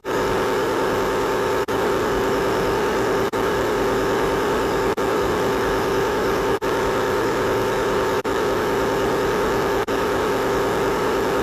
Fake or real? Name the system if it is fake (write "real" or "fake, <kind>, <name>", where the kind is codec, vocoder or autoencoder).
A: fake, codec, DAC